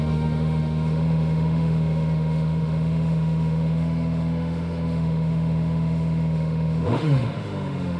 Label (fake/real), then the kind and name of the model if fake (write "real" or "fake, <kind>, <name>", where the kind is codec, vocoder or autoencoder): fake, autoencoder, DAC-VAE